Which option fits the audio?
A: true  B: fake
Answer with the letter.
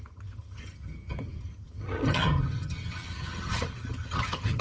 B